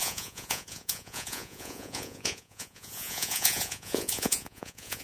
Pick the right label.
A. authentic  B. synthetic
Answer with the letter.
B